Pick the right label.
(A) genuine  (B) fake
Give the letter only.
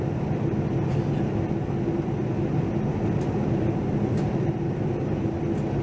A